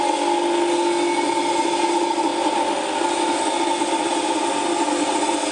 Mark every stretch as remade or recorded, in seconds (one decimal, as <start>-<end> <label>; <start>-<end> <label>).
0.0-5.5 recorded